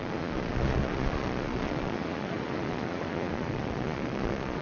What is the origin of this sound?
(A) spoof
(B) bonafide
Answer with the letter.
A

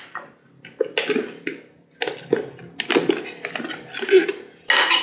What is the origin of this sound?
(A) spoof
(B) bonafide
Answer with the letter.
B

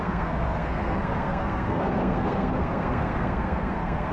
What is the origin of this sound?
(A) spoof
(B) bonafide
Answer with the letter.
A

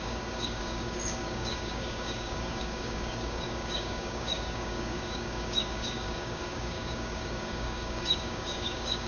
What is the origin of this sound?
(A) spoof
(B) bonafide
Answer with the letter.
A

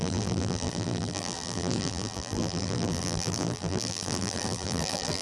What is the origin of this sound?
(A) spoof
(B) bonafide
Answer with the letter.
A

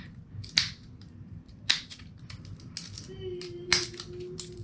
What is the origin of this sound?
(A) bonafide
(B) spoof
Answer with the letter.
A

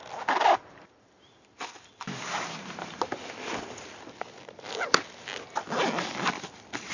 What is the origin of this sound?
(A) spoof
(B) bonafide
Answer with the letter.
B